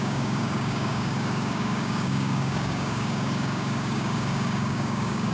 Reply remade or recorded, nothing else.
remade